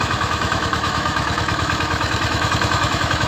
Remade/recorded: remade